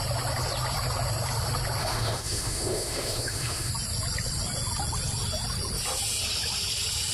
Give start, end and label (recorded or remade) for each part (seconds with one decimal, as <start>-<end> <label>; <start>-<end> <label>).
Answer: 0.0-1.8 recorded; 1.8-3.7 remade; 3.7-7.1 recorded